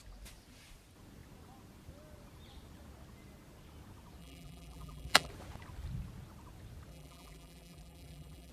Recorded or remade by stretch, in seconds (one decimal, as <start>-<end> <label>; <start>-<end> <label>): 0.0-4.2 recorded; 4.2-5.3 remade; 5.3-6.9 recorded; 6.9-8.5 remade